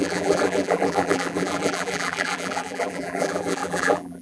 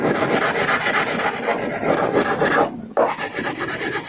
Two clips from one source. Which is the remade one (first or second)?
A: first